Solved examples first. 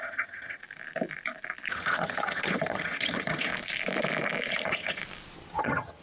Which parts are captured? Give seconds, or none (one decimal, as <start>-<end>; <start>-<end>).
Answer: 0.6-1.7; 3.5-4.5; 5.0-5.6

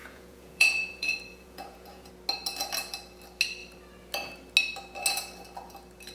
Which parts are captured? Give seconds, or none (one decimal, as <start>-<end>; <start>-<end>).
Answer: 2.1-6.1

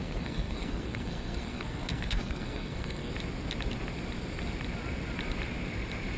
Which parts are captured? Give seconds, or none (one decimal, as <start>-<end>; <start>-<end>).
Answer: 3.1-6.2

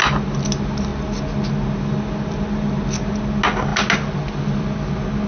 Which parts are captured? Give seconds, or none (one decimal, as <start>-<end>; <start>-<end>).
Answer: 0.0-5.3

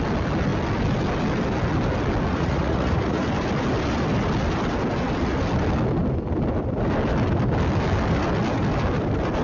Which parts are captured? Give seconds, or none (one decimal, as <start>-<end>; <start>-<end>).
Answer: 0.0-2.3; 3.2-9.4